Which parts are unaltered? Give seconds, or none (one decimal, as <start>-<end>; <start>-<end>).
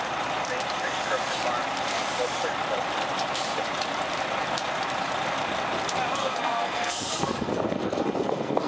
0.0-6.2